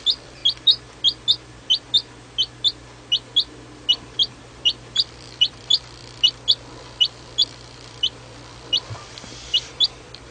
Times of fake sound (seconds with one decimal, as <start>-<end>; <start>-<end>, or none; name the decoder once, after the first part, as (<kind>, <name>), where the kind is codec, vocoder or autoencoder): 0.0-0.4 (vocoder, BigVGAN v2); 4.4-6.0; 6.8-10.3